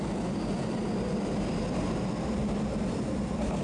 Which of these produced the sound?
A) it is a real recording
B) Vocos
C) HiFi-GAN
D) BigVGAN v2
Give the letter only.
A